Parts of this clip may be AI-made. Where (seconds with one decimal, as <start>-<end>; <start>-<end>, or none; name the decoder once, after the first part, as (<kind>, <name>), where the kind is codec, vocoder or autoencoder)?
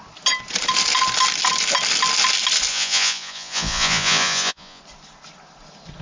2.7-4.8 (vocoder, Vocos)